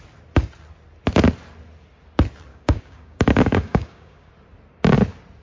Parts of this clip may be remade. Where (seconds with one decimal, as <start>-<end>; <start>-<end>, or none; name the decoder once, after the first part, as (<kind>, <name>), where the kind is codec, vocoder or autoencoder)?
2.5-4.3 (codec, DAC)